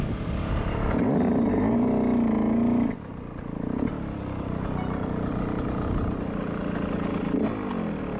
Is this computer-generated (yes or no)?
no